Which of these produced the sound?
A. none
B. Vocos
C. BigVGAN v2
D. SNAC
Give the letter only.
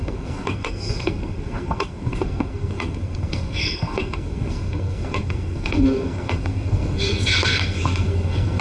D